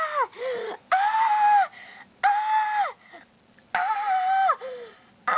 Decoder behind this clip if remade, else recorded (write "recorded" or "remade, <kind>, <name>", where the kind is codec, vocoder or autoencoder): recorded